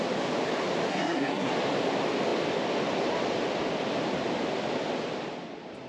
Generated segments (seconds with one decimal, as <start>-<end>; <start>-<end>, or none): 0.9-1.5